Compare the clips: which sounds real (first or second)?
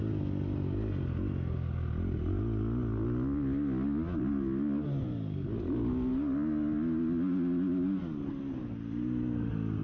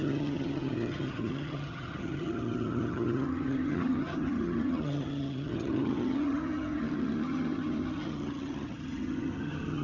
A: first